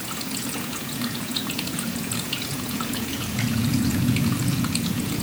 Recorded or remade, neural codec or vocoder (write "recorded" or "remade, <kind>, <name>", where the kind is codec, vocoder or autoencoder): remade, vocoder, Vocos